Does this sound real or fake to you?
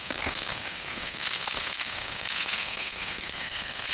fake